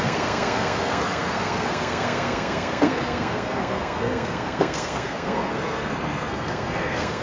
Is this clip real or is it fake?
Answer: fake